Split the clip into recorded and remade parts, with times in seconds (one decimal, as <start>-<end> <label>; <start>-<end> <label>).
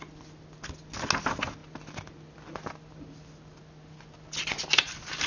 0.0-5.3 recorded